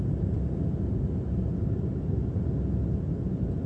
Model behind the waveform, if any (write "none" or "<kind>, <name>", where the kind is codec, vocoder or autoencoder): none